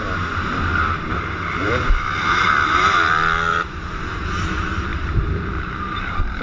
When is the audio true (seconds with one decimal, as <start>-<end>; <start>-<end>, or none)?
0.0-3.5; 4.2-4.9